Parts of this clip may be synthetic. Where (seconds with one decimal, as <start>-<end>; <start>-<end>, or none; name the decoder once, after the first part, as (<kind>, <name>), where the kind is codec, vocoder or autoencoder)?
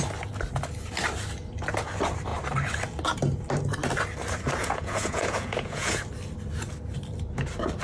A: 4.6-6.0 (vocoder, Vocos)